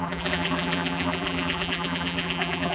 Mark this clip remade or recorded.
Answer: remade